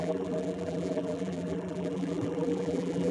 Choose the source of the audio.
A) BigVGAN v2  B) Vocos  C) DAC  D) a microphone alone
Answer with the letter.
A